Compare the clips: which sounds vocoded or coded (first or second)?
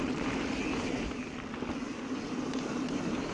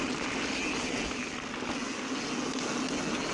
first